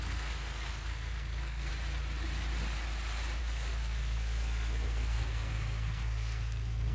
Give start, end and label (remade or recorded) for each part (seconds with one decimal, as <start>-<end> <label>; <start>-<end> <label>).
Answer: 0.0-1.7 remade; 1.7-3.4 recorded; 3.4-6.9 remade